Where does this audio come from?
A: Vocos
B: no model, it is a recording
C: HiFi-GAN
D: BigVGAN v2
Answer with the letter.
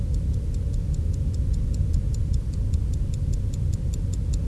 B